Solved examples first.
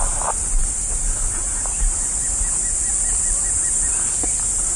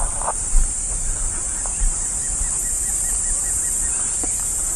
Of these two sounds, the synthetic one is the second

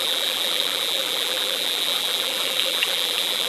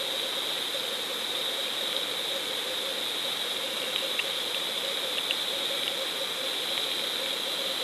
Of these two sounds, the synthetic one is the first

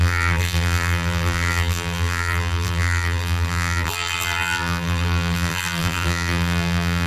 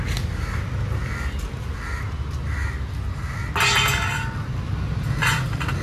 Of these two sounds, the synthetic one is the first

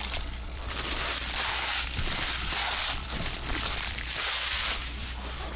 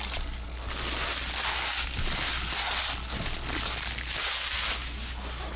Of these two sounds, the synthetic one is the first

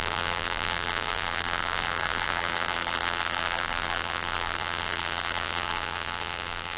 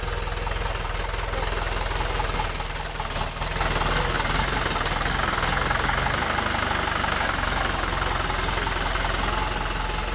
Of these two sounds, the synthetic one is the first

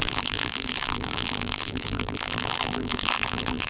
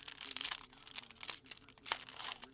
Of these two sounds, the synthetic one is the first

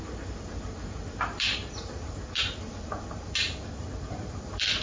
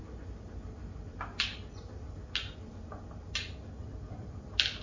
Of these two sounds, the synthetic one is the first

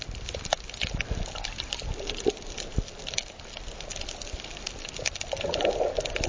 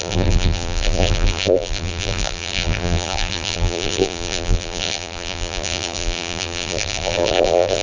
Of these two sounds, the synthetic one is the second